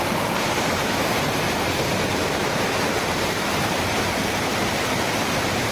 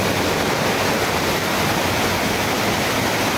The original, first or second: second